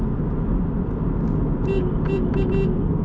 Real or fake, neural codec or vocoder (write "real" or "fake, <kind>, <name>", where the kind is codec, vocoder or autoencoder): real